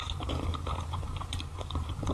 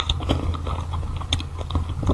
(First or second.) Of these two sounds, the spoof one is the first